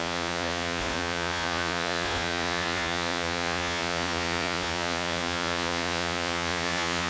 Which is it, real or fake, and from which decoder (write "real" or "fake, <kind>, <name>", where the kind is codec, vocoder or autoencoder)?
fake, vocoder, Vocos